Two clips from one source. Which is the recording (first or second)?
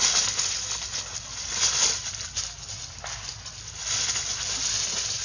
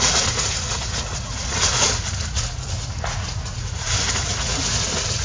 first